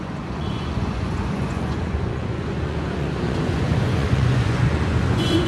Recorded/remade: remade